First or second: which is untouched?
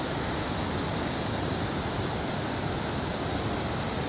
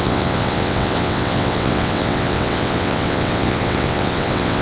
first